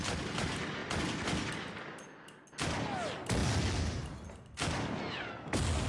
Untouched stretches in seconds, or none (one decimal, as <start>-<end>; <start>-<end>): 0.0-5.9